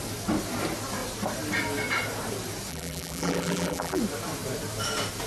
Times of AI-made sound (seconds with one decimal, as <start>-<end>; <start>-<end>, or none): 2.7-4.0